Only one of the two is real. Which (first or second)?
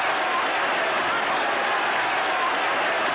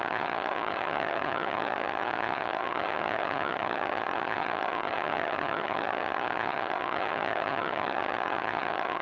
first